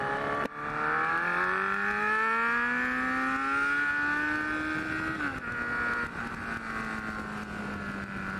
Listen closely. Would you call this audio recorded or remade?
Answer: recorded